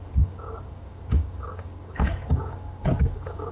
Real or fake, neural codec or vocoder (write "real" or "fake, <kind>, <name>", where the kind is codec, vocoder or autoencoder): fake, codec, DAC